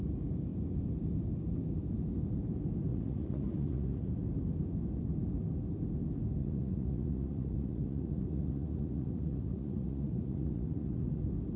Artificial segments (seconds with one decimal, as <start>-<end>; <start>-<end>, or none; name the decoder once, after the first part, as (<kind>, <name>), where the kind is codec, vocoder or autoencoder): 2.9-4.1 (vocoder, Vocos); 6.4-11.2